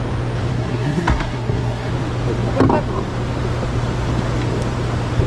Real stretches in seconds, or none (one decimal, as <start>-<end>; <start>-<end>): 0.0-0.5; 1.9-5.3